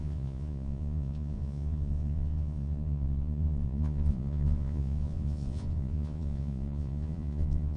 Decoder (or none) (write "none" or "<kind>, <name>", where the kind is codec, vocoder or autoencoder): vocoder, Vocos